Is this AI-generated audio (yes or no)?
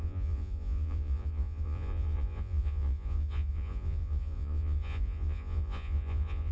yes